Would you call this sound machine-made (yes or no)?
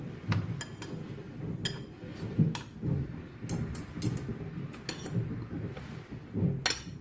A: no